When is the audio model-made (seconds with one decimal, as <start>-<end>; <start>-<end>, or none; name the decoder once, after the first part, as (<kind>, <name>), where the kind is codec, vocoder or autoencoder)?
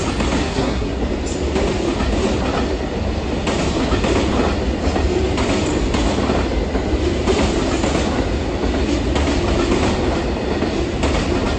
0.4-1.0 (codec, SNAC)